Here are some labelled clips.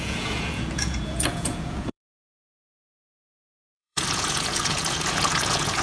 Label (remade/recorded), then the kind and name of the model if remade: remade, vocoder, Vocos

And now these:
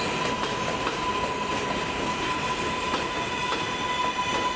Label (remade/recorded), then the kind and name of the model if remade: recorded